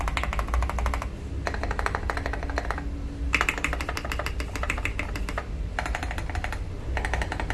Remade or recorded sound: recorded